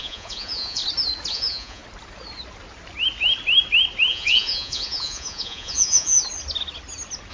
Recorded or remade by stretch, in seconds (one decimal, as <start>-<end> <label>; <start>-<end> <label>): 0.0-0.8 remade; 0.8-1.3 recorded; 1.3-1.8 remade; 1.8-4.1 recorded; 4.1-6.2 remade; 6.2-7.3 recorded